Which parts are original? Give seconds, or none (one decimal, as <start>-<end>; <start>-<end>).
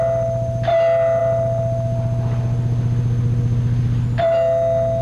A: 0.0-5.0